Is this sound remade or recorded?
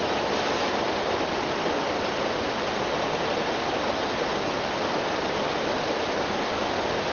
recorded